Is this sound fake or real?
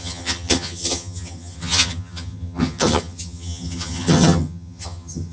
fake